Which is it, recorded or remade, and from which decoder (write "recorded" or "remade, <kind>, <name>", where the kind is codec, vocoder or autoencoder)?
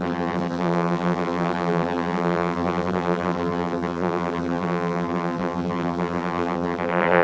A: remade, vocoder, BigVGAN v2